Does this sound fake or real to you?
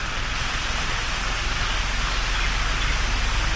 real